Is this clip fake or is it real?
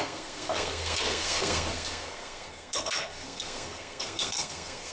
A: fake